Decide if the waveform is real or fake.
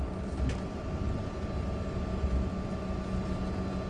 real